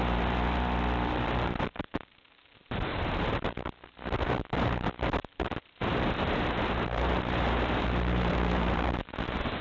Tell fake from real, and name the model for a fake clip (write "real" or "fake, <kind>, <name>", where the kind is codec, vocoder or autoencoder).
fake, vocoder, BigVGAN v2